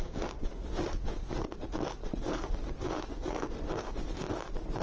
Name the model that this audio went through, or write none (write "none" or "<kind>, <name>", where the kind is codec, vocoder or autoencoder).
none